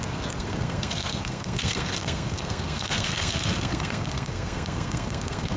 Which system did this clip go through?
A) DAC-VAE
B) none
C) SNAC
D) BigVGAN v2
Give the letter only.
C